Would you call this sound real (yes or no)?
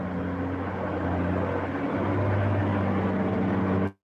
yes